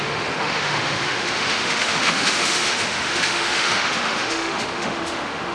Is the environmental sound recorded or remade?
remade